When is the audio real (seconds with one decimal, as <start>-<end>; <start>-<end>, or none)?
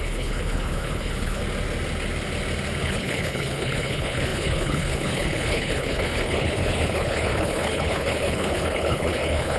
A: 1.4-2.8